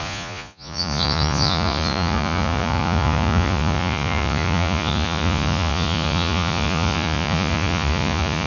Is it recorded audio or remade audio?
remade